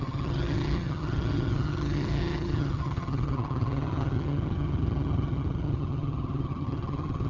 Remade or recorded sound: remade